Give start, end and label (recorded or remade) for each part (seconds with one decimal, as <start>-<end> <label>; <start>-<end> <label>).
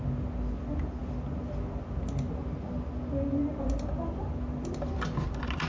0.0-5.7 recorded